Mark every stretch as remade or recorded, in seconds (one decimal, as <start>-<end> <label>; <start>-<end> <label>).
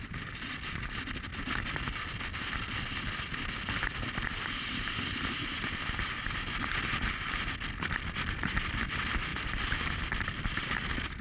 0.0-9.3 recorded; 9.3-9.9 remade; 9.9-11.2 recorded